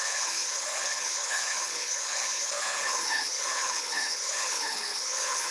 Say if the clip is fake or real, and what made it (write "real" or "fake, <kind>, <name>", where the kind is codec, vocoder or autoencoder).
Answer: fake, codec, HILCodec